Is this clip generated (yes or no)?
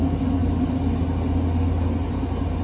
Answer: no